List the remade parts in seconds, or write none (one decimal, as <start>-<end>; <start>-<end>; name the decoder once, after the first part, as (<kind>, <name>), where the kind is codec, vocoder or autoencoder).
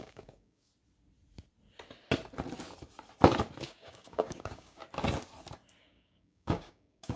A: 0.0-0.7 (codec, DAC); 3.6-4.8; 5.8-7.2